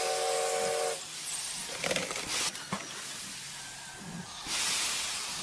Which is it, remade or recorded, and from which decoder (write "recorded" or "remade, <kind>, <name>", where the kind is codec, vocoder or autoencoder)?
recorded